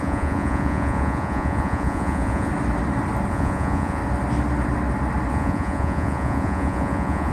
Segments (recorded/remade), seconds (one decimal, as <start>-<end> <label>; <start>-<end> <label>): 0.0-2.5 remade; 2.5-3.3 recorded; 3.3-4.0 remade; 4.0-5.3 recorded; 5.3-7.3 remade

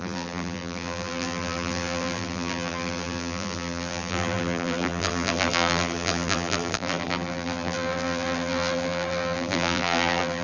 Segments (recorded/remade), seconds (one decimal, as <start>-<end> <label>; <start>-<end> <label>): 0.0-10.4 remade

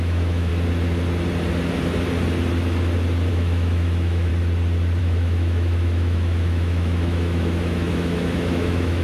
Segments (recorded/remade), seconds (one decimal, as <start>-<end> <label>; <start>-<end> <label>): 0.0-0.5 remade; 0.5-3.3 recorded; 3.3-4.3 remade; 4.3-5.0 recorded; 5.0-9.0 remade

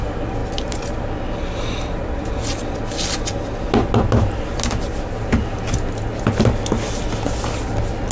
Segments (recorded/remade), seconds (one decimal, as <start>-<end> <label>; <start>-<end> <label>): 0.0-8.1 recorded

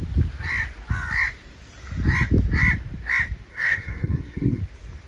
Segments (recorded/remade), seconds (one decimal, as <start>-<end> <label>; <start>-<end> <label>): 0.0-3.5 recorded; 3.5-4.6 remade; 4.6-5.1 recorded

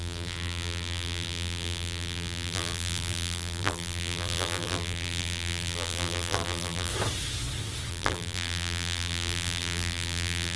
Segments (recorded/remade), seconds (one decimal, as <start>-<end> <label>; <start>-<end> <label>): 0.0-6.9 remade; 6.9-7.9 recorded; 7.9-10.6 remade